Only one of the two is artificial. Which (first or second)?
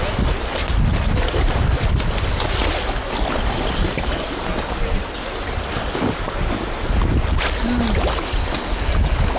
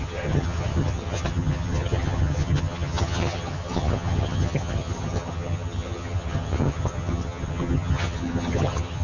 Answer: second